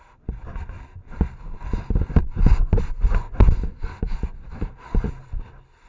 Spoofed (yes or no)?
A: no